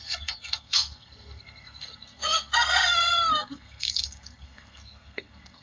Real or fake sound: fake